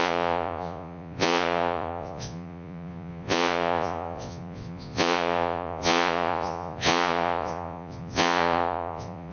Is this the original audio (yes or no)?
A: no